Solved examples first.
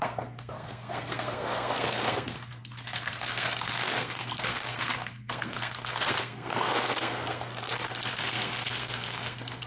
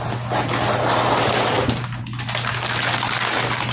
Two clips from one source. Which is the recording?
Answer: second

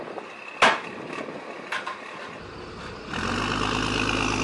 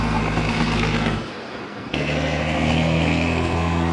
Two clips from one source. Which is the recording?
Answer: first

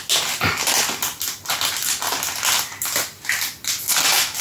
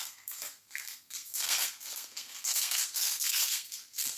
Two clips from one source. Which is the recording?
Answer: first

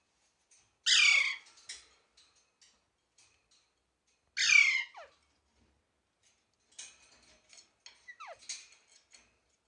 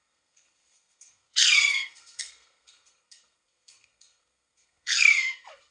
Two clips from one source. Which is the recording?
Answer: first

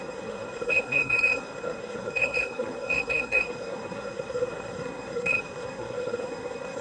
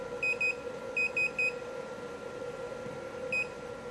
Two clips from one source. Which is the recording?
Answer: second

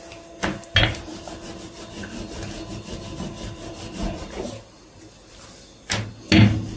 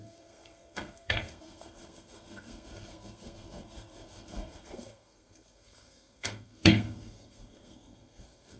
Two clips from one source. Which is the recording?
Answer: first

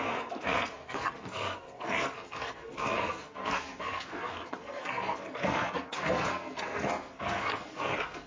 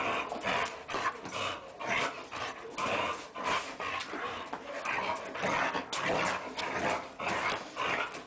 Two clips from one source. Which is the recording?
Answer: second